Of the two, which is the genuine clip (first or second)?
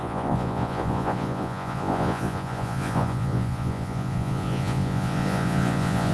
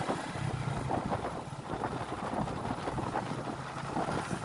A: second